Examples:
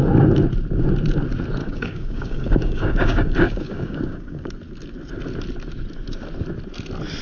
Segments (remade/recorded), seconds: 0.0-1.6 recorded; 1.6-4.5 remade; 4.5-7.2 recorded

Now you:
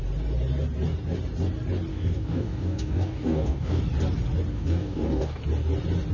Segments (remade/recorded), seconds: 0.0-1.9 recorded; 1.9-3.8 remade; 3.8-4.5 recorded; 4.5-5.4 remade; 5.4-6.1 recorded